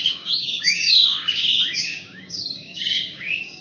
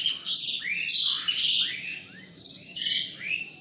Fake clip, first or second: first